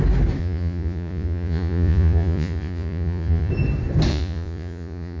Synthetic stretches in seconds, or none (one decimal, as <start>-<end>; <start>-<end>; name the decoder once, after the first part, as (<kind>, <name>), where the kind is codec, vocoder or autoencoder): 0.4-3.5 (vocoder, Vocos); 4.1-5.2